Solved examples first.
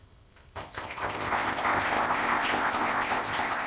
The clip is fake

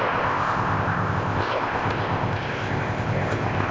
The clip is fake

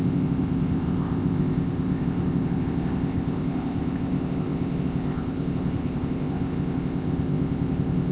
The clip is fake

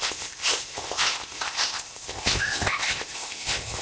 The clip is fake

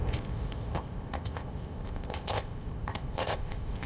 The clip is fake